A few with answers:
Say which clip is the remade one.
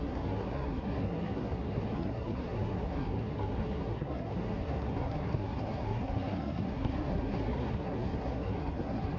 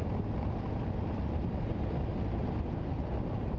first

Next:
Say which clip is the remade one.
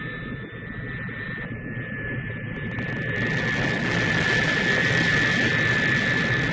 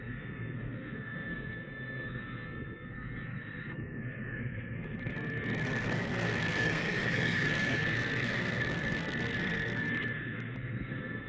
second